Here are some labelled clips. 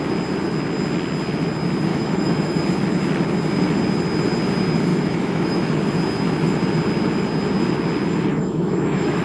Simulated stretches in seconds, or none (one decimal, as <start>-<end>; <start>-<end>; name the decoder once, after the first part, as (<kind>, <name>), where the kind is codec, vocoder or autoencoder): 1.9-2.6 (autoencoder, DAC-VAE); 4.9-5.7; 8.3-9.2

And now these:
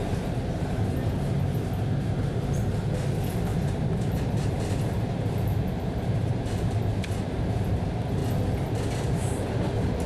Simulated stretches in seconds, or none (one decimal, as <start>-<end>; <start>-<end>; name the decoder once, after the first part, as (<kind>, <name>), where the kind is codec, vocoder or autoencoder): 3.5-6.3 (vocoder, BigVGAN v2)

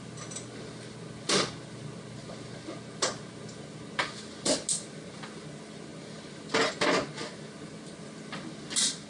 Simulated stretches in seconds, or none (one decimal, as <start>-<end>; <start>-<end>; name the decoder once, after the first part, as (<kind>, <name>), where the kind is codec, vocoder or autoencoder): none

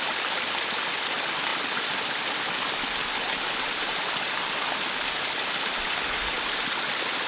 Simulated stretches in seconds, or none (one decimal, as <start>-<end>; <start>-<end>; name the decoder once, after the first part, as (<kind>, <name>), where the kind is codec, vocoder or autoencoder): none

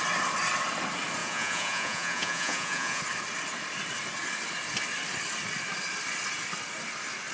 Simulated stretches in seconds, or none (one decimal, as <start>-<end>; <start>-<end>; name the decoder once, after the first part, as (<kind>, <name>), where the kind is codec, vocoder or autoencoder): 1.2-3.0 (vocoder, Vocos)

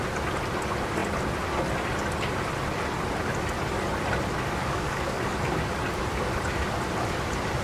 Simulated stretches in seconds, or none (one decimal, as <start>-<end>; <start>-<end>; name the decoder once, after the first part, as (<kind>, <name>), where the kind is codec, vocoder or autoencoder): 4.6-5.3 (codec, DAC)

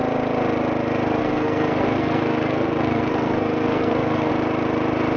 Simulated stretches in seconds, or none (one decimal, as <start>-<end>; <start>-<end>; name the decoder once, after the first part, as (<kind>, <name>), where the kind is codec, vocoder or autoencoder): 1.2-4.3 (codec, SNAC)